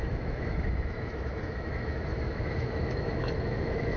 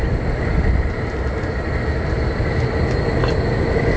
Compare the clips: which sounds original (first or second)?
second